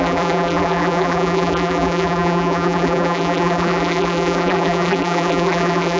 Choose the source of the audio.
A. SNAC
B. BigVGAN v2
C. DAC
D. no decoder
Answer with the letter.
B